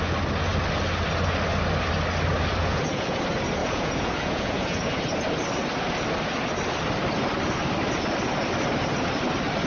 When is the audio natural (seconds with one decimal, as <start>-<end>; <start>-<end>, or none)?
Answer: 0.0-2.6; 3.2-3.6; 5.0-9.7